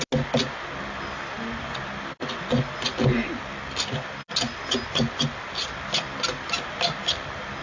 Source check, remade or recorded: recorded